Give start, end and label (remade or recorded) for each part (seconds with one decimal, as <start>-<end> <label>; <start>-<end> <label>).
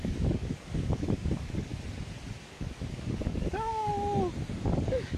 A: 0.0-1.7 remade; 1.7-2.5 recorded; 2.5-3.9 remade; 3.9-4.5 recorded; 4.5-5.2 remade